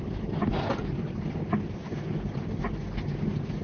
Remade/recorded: recorded